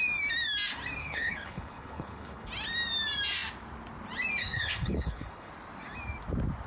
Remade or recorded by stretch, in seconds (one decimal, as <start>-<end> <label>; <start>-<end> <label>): 0.0-1.0 recorded; 1.0-2.5 remade; 2.5-4.4 recorded; 4.4-5.5 remade; 5.5-6.7 recorded